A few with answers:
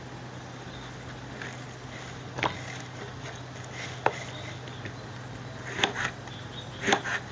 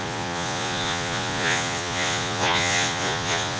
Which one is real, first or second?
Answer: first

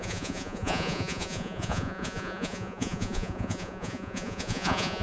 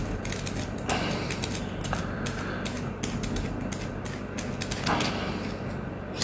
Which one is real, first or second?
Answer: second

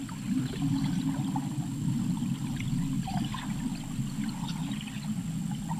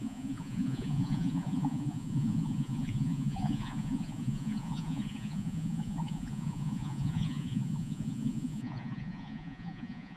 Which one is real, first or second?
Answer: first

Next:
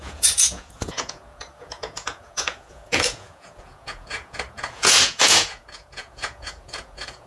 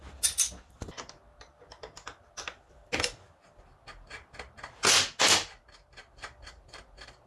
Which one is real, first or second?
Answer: second